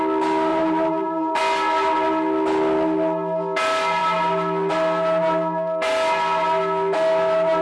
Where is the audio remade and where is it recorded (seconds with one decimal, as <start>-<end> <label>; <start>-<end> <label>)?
0.0-0.5 recorded; 0.5-1.4 remade; 1.4-7.6 recorded